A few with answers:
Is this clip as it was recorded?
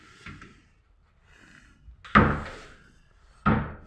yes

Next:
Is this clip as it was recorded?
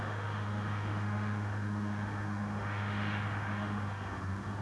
no